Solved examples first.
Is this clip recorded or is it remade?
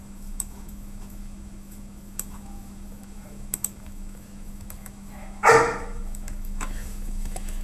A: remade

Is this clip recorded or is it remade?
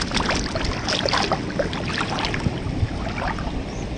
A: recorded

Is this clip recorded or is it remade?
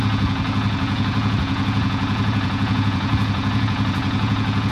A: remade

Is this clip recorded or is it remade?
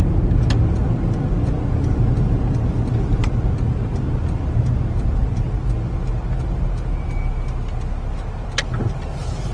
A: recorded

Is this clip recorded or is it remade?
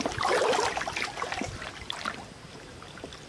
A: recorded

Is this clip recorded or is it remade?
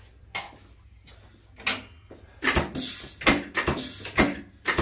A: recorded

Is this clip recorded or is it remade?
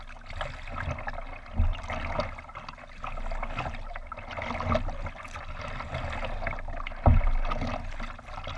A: recorded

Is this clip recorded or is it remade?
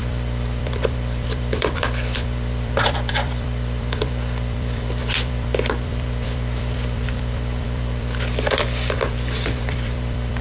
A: remade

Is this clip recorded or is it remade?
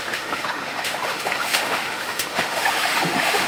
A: remade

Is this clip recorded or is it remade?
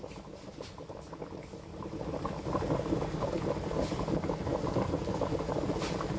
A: recorded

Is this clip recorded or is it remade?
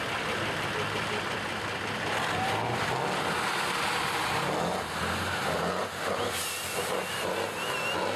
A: recorded